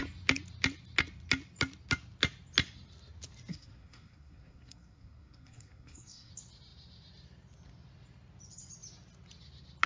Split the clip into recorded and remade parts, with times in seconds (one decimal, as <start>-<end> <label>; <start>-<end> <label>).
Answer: 0.0-3.5 recorded; 3.5-6.3 remade; 6.3-9.9 recorded